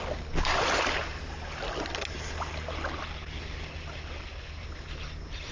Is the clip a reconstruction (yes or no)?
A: no